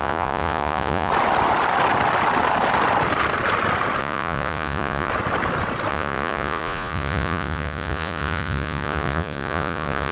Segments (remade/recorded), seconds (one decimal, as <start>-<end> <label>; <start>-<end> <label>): 0.0-1.1 remade; 1.1-4.0 recorded; 4.0-5.1 remade; 5.1-5.9 recorded; 5.9-10.1 remade